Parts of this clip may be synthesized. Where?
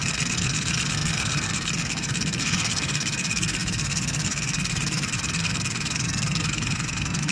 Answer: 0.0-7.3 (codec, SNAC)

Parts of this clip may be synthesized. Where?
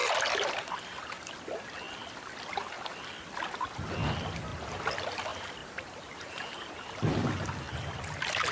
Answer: 0.0-1.3 (vocoder, BigVGAN v2); 4.5-5.1; 5.6-6.9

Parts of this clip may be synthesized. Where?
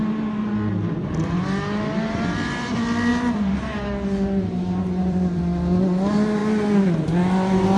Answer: 3.1-5.4 (vocoder, BigVGAN v2)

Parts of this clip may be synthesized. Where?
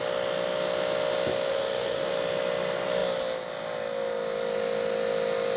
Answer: 1.5-2.1 (codec, SNAC)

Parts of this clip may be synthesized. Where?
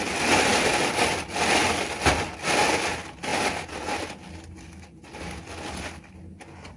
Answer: none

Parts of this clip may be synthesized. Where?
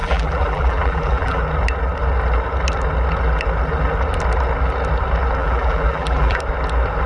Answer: 0.0-1.4 (vocoder, BigVGAN v2); 5.4-6.4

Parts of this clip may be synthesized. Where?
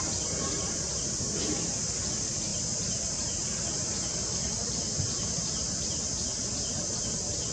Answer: none